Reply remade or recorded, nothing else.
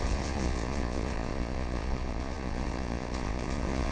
remade